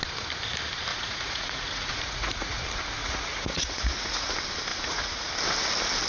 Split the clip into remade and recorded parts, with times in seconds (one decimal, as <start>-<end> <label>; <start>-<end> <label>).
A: 0.0-0.9 recorded; 0.9-2.6 remade; 2.6-3.0 recorded; 3.0-4.3 remade; 4.3-4.7 recorded; 4.7-5.3 remade; 5.3-6.1 recorded